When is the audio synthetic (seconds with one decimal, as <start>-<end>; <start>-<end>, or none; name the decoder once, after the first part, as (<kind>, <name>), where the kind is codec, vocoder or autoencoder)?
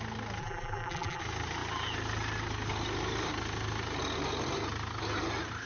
0.4-1.2 (vocoder, BigVGAN v2)